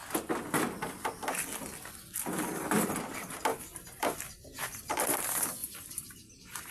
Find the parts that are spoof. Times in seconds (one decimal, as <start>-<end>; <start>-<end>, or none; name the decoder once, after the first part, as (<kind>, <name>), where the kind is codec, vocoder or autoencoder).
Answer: 3.5-5.0 (vocoder, BigVGAN v2); 5.6-6.7